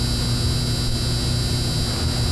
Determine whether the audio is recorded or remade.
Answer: recorded